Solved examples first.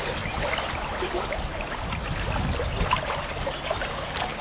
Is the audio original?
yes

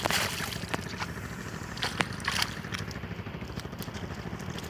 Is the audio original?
yes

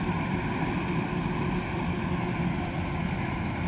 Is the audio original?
no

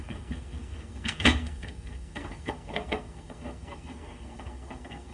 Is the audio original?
no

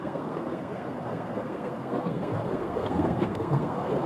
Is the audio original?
no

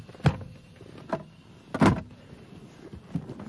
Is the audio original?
yes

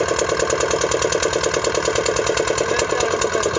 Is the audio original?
yes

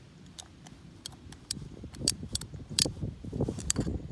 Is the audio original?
no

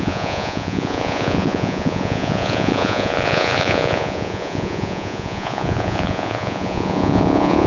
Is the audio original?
no